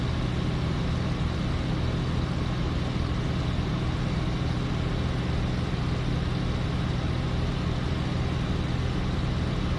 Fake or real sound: real